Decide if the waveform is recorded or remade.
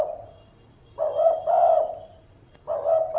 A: recorded